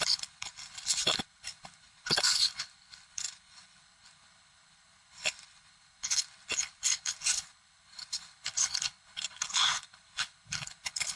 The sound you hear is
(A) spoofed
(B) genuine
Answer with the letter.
A